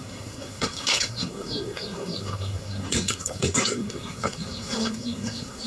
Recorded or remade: remade